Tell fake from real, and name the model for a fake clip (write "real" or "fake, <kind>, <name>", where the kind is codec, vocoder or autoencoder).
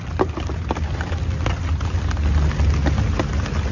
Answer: real